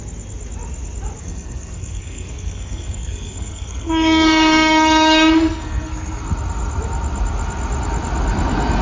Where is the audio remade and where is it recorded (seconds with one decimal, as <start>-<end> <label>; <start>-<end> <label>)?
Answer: 0.0-1.2 recorded; 1.2-6.2 remade; 6.2-8.8 recorded